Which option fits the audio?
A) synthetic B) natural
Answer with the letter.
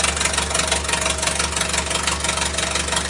B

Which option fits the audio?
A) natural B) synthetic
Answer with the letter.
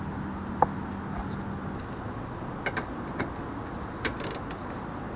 A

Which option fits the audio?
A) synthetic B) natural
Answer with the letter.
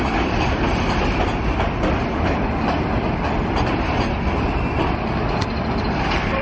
B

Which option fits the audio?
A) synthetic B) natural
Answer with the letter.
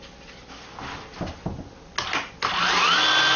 B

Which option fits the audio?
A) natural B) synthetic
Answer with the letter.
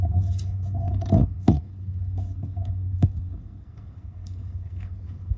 B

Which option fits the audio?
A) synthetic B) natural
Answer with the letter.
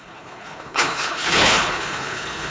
A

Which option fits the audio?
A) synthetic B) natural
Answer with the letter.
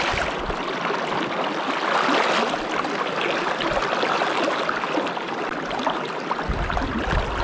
B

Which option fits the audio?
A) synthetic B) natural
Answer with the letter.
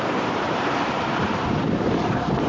A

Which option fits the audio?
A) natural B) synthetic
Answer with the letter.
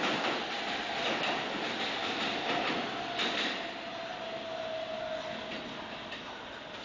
A